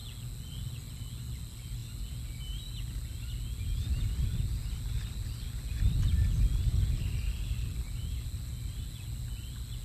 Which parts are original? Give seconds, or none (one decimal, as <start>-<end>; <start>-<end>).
0.0-9.8